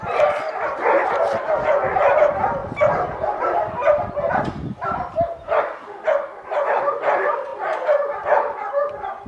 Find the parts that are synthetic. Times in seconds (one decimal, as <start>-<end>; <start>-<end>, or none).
none

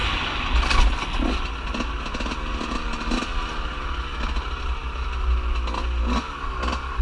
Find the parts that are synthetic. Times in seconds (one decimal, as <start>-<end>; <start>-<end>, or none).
none

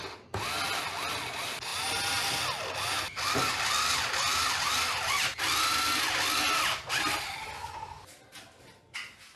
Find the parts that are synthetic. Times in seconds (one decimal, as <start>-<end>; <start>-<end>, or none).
none